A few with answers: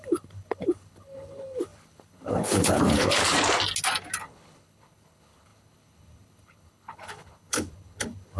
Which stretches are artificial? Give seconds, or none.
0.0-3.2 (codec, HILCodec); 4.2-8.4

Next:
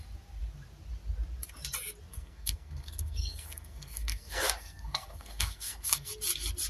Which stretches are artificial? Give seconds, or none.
2.1-6.1 (codec, SNAC)

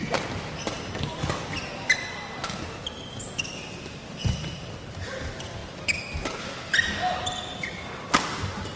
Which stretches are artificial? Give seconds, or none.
none

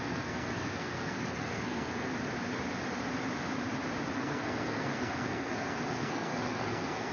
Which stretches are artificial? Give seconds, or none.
0.0-2.1 (codec, SNAC); 4.1-7.1

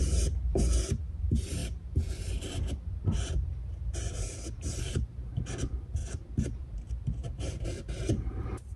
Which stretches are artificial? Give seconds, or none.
0.0-1.6 (vocoder, BigVGAN v2); 4.8-6.0; 6.6-8.8

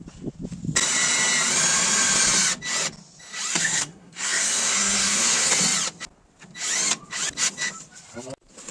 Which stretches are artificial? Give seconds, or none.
3.5-5.5 (codec, SNAC)